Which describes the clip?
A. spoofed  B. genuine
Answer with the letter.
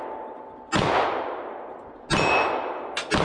B